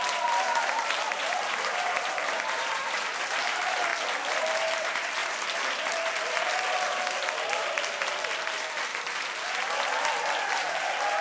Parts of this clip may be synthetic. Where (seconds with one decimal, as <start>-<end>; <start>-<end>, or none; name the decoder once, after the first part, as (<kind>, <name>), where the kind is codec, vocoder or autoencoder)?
0.0-5.2 (vocoder, BigVGAN v2); 5.9-8.9